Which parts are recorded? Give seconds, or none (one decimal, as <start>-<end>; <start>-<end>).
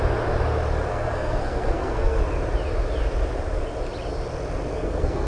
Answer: 0.0-0.9; 2.2-4.7